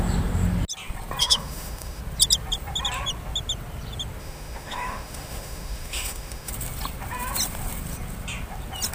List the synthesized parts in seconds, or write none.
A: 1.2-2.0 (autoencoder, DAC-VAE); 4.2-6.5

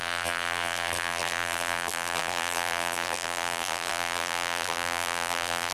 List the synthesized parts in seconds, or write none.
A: 0.0-5.7 (vocoder, BigVGAN v2)

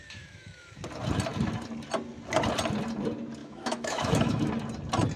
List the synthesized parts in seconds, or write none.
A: 0.0-0.8 (autoencoder, DAC-VAE); 3.4-4.5

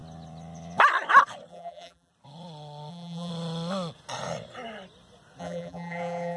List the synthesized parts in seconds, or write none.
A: 1.5-2.1 (vocoder, BigVGAN v2); 2.9-3.3; 5.4-6.4

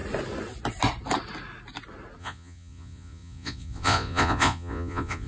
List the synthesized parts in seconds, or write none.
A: 2.2-5.3 (vocoder, Vocos)